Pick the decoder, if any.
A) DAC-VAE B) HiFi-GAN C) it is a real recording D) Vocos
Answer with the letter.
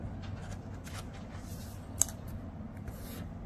C